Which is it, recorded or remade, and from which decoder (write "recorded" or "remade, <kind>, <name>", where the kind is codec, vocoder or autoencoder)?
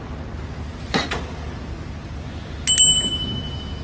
recorded